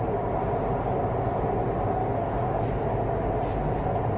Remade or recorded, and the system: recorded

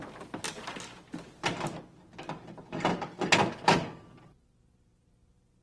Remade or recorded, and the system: recorded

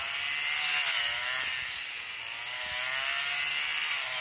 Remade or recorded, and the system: recorded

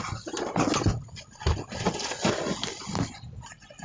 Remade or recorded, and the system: recorded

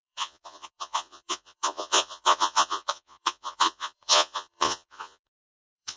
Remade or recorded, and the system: remade, vocoder, Vocos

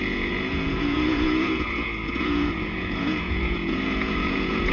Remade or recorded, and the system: remade, vocoder, Vocos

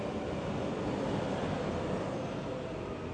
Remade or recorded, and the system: recorded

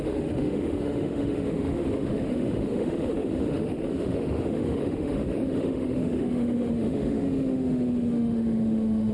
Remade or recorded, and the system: remade, autoencoder, DAC-VAE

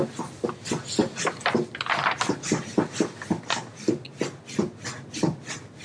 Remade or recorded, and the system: recorded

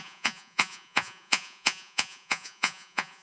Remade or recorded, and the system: remade, vocoder, Vocos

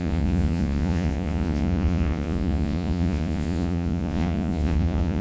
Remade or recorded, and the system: remade, vocoder, Vocos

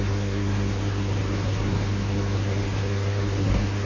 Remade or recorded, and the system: remade, codec, SNAC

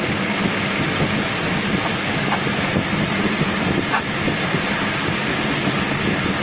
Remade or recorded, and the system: recorded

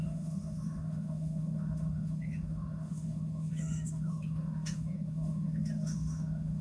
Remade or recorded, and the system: remade, autoencoder, DAC-VAE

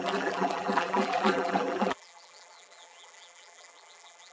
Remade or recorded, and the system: remade, vocoder, BigVGAN v2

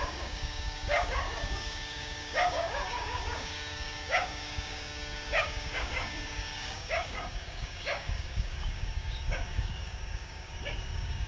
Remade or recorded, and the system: remade, codec, DAC